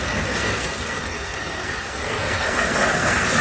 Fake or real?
fake